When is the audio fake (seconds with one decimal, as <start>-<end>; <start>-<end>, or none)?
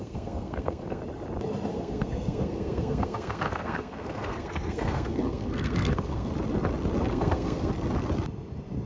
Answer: 0.0-1.0; 1.7-6.3; 7.1-7.7